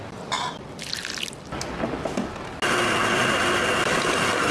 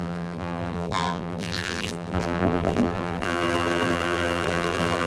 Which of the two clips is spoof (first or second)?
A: second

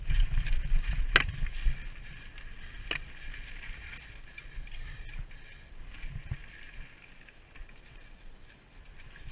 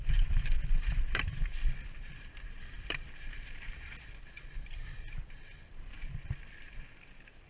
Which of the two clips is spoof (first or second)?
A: second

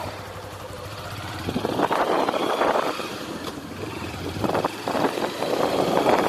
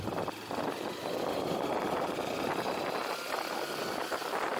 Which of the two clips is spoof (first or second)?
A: first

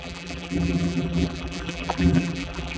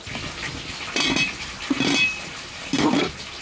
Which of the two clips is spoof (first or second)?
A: first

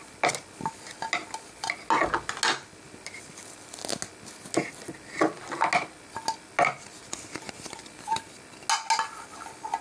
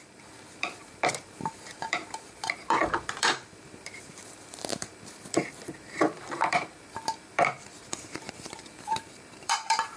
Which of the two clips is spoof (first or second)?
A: second